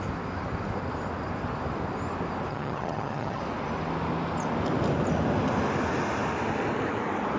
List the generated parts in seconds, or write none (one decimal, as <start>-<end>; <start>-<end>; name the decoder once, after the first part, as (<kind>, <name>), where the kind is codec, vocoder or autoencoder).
2.5-3.4 (vocoder, HiFi-GAN)